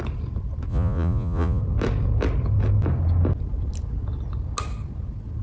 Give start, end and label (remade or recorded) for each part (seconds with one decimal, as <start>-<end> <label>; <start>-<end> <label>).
0.0-0.7 recorded; 0.7-1.6 remade; 1.6-5.4 recorded